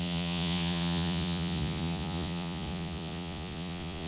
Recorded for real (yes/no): no